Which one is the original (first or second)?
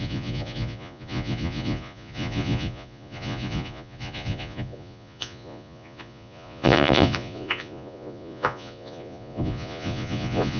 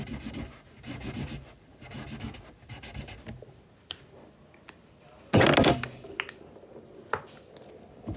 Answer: second